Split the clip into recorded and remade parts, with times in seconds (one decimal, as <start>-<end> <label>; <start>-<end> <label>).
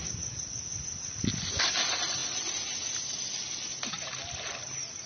0.0-5.1 recorded